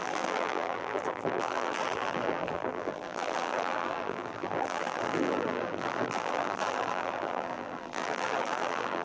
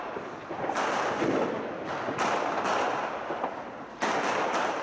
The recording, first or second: second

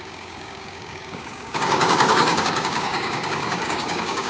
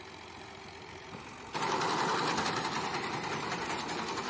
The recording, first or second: second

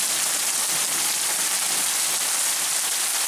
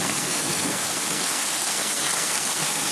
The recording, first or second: first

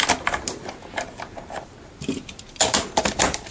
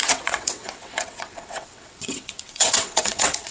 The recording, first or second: first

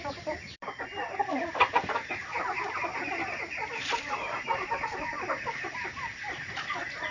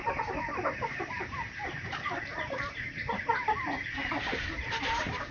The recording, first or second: first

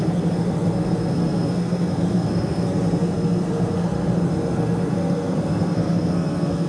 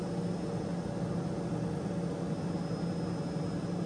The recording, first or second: second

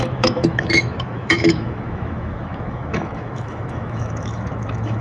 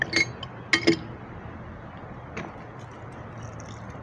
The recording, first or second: second